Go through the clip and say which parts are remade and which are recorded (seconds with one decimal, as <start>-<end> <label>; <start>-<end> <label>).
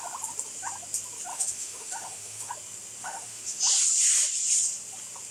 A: 0.0-1.3 recorded; 1.3-2.5 remade; 2.5-3.0 recorded; 3.0-3.6 remade; 3.6-5.3 recorded